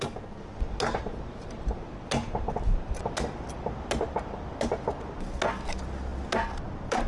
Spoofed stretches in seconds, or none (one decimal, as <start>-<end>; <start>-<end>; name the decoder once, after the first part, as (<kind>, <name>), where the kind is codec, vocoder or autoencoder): none